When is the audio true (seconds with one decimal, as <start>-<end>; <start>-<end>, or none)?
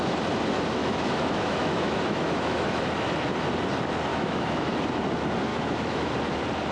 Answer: 0.0-0.8; 2.9-4.1; 4.7-5.5; 6.1-6.7